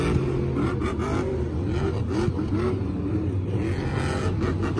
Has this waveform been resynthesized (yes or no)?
no